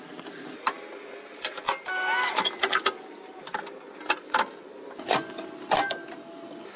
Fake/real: real